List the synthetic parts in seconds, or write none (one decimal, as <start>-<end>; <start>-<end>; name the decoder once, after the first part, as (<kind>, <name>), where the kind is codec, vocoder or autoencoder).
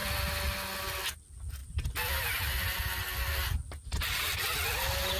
none